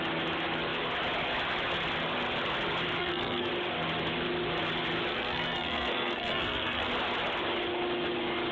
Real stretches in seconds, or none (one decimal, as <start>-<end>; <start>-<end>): 0.0-3.0; 3.5-5.1; 6.9-8.5